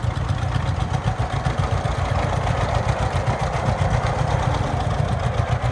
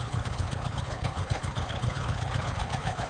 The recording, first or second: first